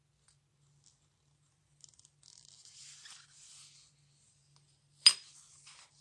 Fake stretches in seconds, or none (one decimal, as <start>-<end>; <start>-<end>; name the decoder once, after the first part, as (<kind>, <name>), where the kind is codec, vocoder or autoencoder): none